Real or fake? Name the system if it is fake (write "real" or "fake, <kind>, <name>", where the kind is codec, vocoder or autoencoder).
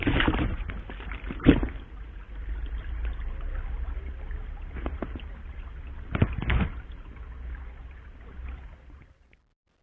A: real